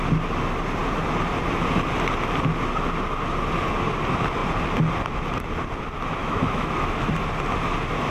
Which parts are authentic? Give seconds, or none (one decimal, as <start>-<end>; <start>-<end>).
0.0-6.2; 7.1-8.1